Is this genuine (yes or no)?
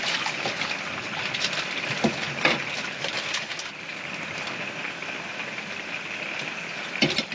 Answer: yes